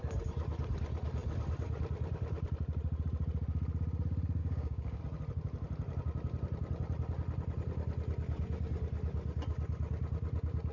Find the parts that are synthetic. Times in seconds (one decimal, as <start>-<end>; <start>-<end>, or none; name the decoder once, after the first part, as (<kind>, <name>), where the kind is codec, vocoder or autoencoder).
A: 4.4-5.0 (codec, DAC)